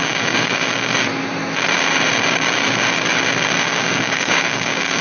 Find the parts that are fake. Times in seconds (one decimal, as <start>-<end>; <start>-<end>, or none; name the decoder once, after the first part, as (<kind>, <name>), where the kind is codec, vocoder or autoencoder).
0.0-0.9 (codec, DAC); 3.6-5.0